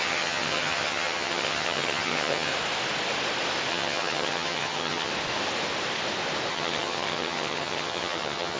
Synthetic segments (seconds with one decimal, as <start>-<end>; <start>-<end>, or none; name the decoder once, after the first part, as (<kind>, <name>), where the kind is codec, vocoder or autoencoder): 0.0-2.5 (vocoder, HiFi-GAN); 3.7-5.1; 6.5-8.6